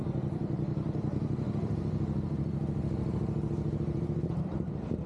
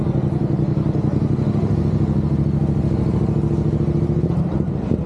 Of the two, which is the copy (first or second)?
first